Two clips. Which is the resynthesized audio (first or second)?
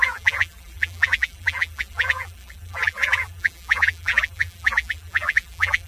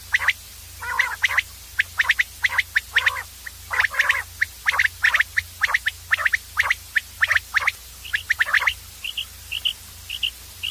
first